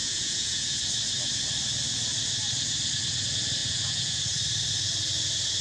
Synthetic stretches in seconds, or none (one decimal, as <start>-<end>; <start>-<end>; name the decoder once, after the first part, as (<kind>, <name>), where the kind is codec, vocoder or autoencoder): 0.0-0.8 (vocoder, Vocos); 3.6-4.2